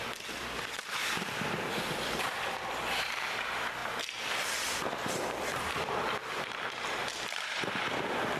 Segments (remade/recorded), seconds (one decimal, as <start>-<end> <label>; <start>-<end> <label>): 0.0-8.4 remade